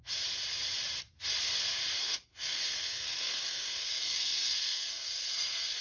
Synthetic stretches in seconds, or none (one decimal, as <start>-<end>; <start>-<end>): 2.0-5.8